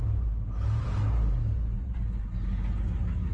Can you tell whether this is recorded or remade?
recorded